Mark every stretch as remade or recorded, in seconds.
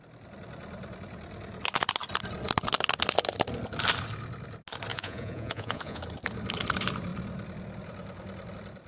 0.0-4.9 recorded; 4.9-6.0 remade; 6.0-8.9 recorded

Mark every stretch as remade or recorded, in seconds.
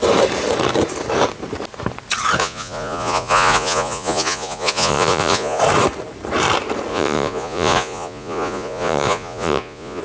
0.0-2.4 recorded; 2.4-5.6 remade; 5.6-6.9 recorded; 6.9-10.0 remade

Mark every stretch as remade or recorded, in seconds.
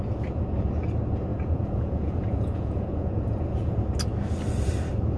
0.0-1.3 recorded; 1.3-3.8 remade; 3.8-5.2 recorded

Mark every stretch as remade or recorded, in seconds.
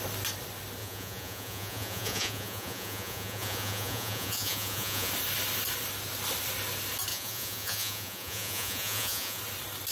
0.0-0.8 recorded; 0.8-5.1 remade; 5.1-7.1 recorded; 7.1-9.4 remade; 9.4-9.9 recorded